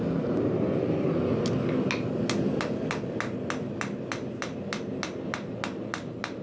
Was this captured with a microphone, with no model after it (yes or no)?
yes